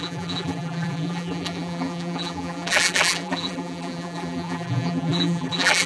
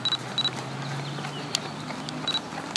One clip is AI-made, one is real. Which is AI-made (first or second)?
first